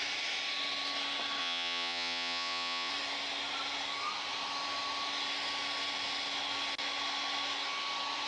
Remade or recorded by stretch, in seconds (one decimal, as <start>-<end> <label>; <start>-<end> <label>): 0.0-1.4 recorded; 1.4-2.9 remade; 2.9-8.3 recorded